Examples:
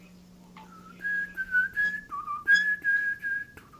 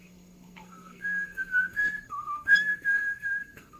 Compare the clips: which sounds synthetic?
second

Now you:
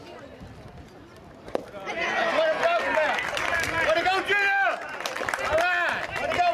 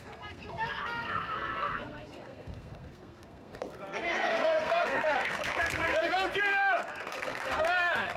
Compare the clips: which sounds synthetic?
second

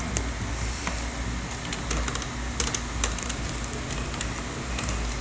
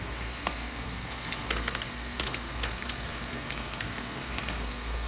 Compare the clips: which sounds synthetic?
second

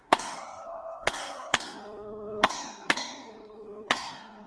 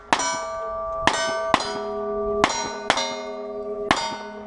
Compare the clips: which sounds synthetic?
first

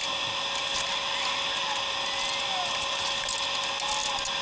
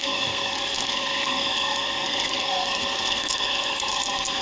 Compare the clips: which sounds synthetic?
second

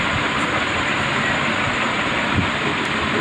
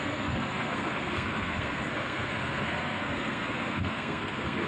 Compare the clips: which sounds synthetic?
second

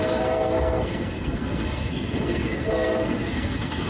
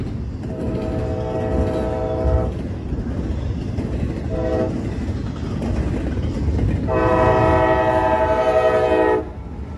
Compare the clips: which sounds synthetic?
first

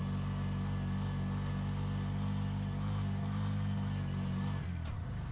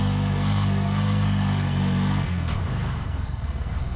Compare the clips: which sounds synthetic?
second